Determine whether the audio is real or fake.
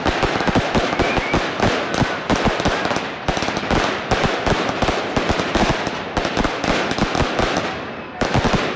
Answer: real